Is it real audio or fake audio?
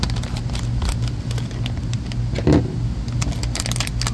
real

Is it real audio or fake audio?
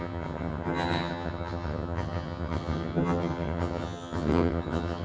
fake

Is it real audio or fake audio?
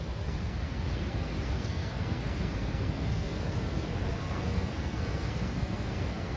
fake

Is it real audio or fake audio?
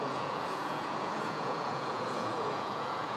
fake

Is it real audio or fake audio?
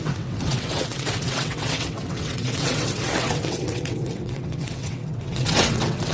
fake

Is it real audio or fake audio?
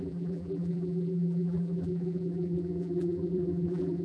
fake